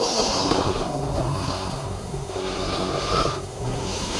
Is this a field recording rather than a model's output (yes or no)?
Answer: no